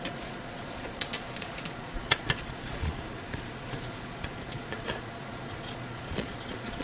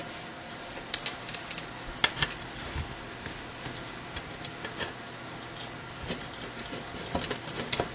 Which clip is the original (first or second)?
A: second